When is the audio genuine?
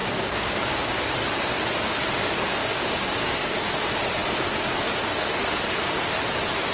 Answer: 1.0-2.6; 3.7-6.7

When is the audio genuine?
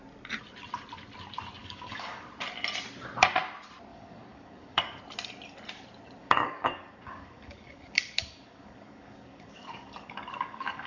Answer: 0.0-1.6; 2.3-3.9; 5.0-6.2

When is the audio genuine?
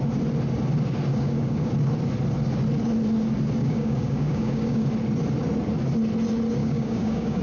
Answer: 0.0-1.1; 1.7-3.6; 4.9-6.6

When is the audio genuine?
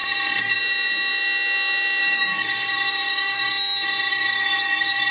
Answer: 0.0-2.0; 3.5-4.1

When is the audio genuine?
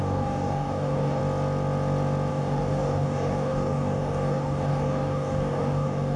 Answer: 1.2-2.3